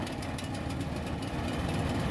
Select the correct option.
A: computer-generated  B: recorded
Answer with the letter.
A